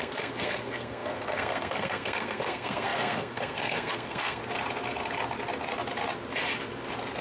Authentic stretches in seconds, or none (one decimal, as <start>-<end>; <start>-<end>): 4.4-7.2